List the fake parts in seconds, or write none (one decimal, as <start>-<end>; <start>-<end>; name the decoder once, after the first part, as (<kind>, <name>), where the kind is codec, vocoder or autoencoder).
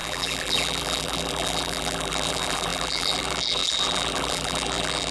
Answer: 0.0-5.1 (vocoder, BigVGAN v2)